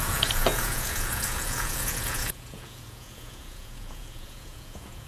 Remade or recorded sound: remade